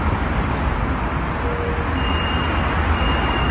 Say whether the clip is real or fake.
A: real